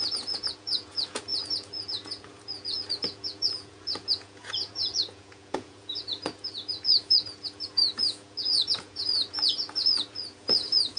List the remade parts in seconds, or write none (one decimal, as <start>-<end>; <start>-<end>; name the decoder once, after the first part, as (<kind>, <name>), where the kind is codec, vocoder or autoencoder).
0.0-11.0 (vocoder, Vocos)